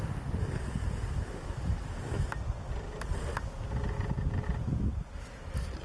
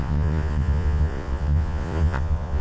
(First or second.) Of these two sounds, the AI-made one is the second